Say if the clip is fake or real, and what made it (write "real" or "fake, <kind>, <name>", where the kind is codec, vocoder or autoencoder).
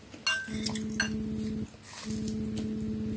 real